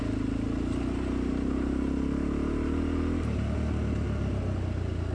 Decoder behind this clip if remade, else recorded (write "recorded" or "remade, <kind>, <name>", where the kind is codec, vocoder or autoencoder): recorded